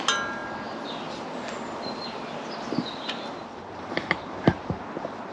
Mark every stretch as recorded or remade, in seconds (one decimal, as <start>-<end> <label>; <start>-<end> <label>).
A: 0.0-5.3 recorded